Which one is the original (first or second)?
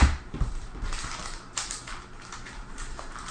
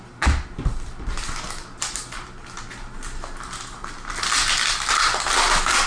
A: second